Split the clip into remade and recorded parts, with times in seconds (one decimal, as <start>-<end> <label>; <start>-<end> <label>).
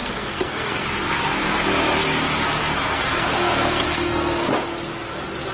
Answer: 0.0-1.7 remade; 1.7-2.6 recorded; 2.6-4.5 remade; 4.5-5.5 recorded